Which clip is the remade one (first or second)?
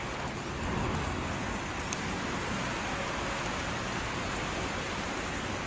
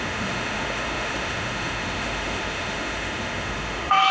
second